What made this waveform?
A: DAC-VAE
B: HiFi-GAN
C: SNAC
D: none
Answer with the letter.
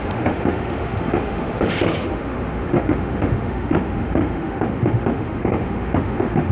A